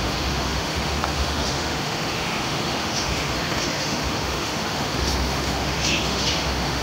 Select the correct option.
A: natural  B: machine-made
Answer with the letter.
B